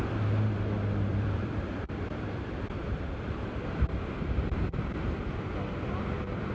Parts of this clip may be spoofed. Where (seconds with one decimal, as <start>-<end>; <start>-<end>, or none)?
1.1-2.7